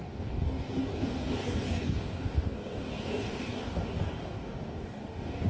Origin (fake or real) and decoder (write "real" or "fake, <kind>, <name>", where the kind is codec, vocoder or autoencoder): fake, codec, DAC